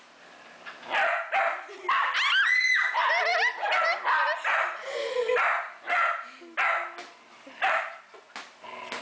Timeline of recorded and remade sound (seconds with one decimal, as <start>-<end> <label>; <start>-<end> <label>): 0.0-9.0 recorded

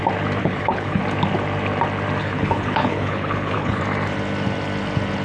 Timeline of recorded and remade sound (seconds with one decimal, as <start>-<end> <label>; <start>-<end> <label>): 0.0-0.4 recorded; 0.4-1.0 remade; 1.0-2.2 recorded; 2.2-3.8 remade; 3.8-5.2 recorded

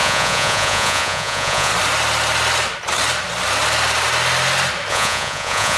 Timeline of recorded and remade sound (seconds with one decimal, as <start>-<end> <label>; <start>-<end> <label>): 0.0-1.7 remade; 1.7-4.9 recorded; 4.9-5.8 remade